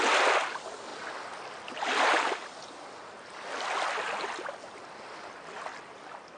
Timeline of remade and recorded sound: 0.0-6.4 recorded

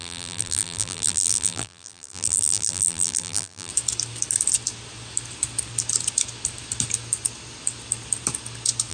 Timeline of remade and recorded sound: 0.0-3.7 remade; 3.7-8.9 recorded